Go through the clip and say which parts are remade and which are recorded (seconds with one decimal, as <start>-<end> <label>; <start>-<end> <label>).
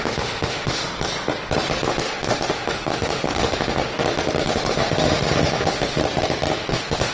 0.0-0.8 remade; 0.8-1.8 recorded; 1.8-3.9 remade; 3.9-4.5 recorded; 4.5-6.0 remade; 6.0-6.6 recorded; 6.6-7.1 remade